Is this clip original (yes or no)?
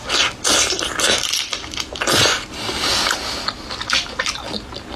yes